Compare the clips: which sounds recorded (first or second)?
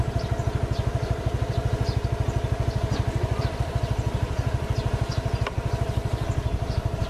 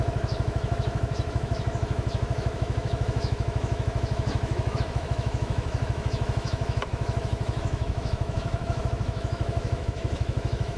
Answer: first